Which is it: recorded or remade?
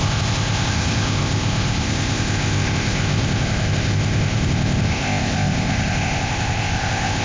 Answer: remade